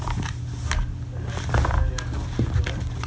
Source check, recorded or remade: recorded